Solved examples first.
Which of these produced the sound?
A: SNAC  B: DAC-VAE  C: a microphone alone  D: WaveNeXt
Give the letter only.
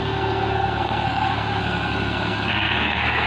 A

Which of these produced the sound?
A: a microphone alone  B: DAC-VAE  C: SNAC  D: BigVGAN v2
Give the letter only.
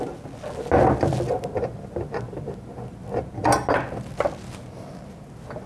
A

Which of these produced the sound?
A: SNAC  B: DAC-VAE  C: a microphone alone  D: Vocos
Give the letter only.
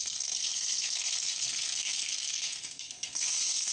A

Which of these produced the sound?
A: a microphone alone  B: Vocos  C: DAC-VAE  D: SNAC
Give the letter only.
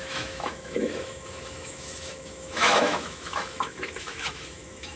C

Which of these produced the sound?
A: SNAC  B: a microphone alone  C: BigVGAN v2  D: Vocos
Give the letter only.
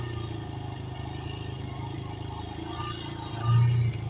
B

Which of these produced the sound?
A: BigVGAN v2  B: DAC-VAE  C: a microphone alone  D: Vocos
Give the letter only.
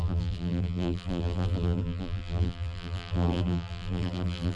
A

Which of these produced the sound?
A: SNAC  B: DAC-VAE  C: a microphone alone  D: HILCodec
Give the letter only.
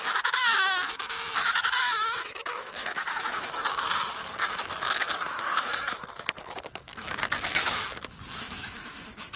B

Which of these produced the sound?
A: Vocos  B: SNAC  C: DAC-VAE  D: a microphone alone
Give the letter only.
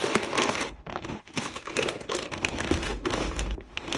C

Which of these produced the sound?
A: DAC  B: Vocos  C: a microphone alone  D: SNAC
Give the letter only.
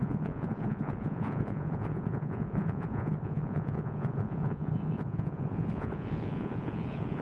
B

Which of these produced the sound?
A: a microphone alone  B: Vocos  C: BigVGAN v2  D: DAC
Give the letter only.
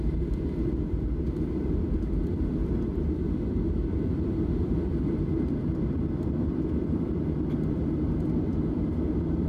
C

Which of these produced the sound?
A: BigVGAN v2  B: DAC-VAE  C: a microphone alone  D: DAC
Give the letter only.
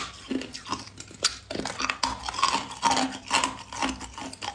C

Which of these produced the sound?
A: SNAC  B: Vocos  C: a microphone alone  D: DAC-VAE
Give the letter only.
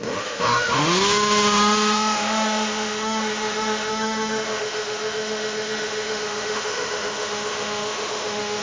D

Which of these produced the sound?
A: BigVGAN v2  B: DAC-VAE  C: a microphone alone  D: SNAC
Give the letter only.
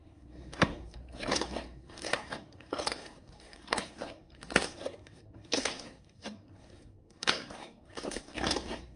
D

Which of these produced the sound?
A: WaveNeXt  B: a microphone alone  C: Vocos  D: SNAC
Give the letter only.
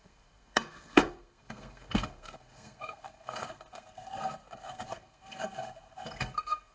D